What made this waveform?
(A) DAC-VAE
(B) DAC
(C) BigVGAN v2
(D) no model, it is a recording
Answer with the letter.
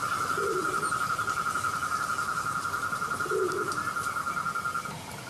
D